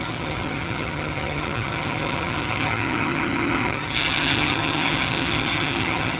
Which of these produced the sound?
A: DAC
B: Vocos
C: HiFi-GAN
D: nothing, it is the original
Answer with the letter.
C